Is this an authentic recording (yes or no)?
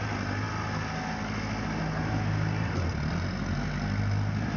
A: yes